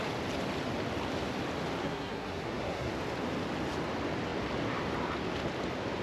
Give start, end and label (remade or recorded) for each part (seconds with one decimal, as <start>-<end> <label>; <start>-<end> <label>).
0.0-1.8 recorded; 1.8-2.9 remade; 2.9-6.0 recorded